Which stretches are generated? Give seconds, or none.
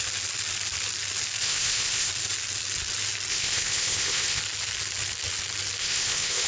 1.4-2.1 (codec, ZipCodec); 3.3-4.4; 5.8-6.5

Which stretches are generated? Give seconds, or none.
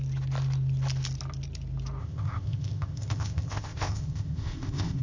2.0-5.0 (codec, ZipCodec)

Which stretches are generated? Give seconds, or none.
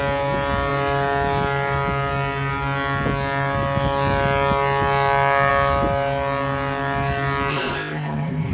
7.5-8.5 (codec, ZipCodec)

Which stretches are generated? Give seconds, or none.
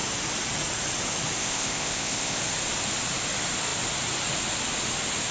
1.4-2.4 (codec, ZipCodec)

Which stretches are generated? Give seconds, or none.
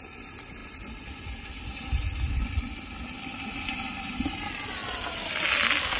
none